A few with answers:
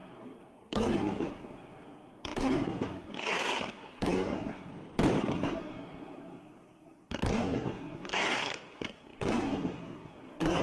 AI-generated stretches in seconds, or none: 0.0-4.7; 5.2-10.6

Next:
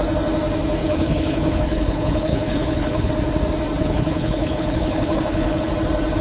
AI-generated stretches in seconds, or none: 0.8-3.1; 3.8-5.7

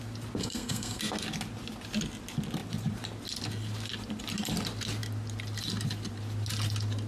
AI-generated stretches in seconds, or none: 0.4-1.0